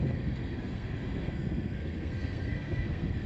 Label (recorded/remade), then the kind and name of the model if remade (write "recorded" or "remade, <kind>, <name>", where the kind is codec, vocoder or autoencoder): remade, codec, SNAC